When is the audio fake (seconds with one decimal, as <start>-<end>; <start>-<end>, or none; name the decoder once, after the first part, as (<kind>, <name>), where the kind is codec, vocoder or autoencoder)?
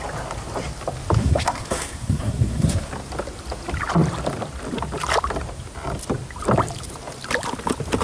1.2-2.9 (codec, SNAC)